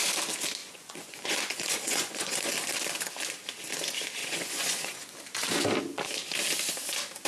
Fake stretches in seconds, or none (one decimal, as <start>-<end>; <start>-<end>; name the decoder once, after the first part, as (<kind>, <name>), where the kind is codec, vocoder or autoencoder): 0.6-2.5 (vocoder, Vocos); 4.2-5.1